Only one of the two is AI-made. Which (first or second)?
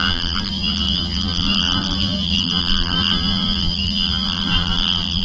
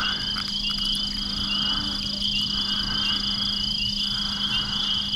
first